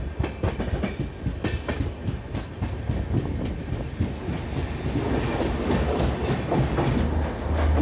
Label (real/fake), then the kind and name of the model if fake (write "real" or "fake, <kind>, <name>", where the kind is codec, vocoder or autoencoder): real